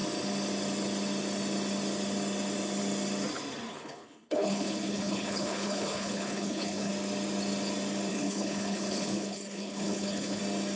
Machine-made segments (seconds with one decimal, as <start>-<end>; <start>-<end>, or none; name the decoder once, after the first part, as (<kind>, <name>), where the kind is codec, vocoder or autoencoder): 3.7-6.9 (codec, HILCodec); 8.1-10.4